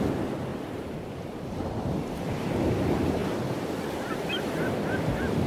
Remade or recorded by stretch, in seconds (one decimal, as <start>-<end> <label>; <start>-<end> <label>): 0.0-0.5 recorded; 0.5-1.9 remade; 1.9-5.5 recorded